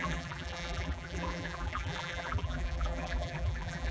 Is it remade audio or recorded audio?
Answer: remade